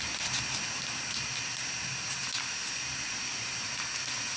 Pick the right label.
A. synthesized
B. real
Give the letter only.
B